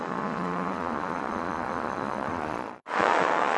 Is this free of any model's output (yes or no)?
no